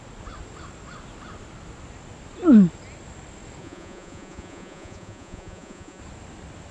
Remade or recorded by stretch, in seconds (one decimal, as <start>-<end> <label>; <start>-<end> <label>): 0.0-3.6 recorded; 3.6-6.0 remade; 6.0-6.7 recorded